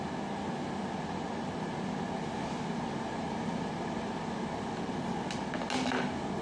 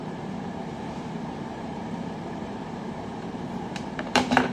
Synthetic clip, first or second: second